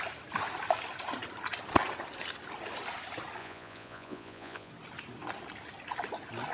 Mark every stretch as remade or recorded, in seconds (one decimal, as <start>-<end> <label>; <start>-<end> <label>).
0.0-3.4 recorded; 3.4-4.7 remade; 4.7-6.5 recorded